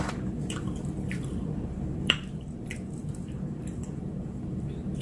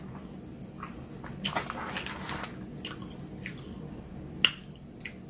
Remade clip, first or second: first